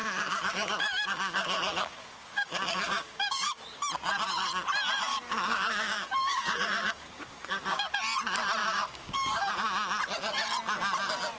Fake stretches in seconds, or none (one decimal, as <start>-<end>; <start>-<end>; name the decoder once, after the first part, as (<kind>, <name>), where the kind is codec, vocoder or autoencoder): 0.0-3.5 (codec, DAC); 5.1-7.9; 8.6-9.5